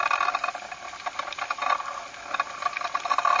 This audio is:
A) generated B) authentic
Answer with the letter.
B